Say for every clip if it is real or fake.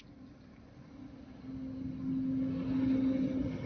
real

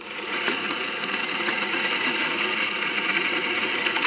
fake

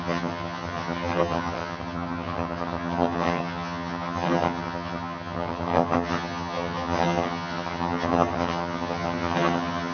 fake